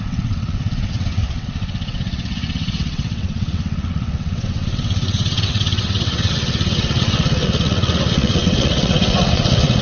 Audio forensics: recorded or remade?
remade